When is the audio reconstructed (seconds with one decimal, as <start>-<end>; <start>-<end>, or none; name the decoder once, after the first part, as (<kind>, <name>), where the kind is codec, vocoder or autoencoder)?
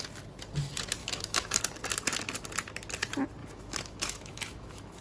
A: 1.0-1.6 (autoencoder, DAC-VAE); 3.4-5.0